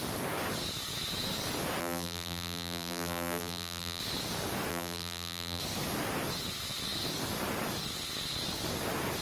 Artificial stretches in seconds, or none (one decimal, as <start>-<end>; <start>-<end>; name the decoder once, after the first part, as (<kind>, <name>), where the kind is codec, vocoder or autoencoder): 1.8-4.0 (vocoder, BigVGAN v2); 4.7-5.6